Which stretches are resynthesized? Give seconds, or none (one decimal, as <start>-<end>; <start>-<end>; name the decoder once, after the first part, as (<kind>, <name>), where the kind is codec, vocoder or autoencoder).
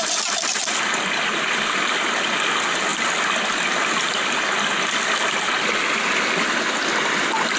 none